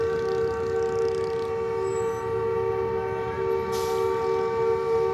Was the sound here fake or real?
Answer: real